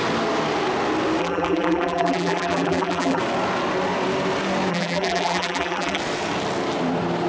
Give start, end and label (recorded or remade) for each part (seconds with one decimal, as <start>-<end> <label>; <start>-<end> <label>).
0.0-1.2 recorded; 1.2-3.2 remade; 3.2-4.7 recorded; 4.7-6.0 remade; 6.0-7.3 recorded